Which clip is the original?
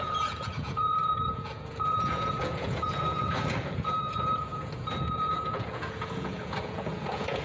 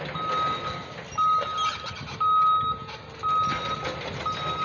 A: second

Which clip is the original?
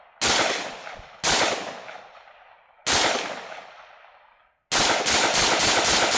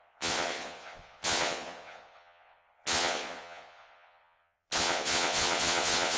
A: first